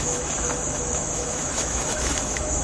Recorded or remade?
remade